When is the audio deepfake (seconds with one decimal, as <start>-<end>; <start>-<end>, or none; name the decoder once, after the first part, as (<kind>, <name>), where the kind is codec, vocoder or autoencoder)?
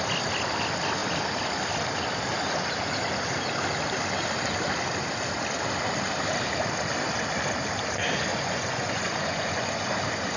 8.3-9.8 (vocoder, Vocos)